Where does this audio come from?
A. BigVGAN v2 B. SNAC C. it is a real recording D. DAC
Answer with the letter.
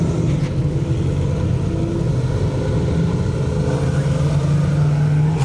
C